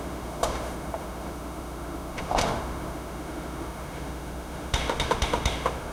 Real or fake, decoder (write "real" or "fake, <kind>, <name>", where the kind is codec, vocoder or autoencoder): fake, autoencoder, DAC-VAE